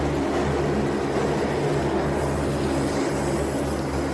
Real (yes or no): yes